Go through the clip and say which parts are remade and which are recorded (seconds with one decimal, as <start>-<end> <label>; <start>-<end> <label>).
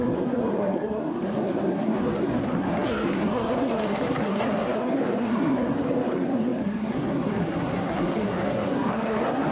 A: 0.0-9.5 remade